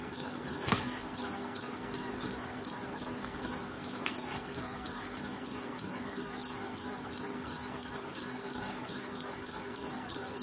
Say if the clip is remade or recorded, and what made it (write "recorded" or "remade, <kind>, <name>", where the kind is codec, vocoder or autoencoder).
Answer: remade, codec, SNAC